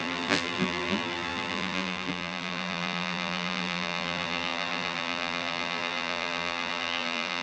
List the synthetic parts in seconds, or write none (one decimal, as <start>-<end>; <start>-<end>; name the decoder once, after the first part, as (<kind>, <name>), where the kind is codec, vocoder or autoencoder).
0.0-7.4 (vocoder, BigVGAN v2)